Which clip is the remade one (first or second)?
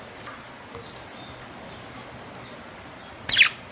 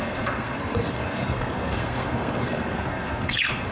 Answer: second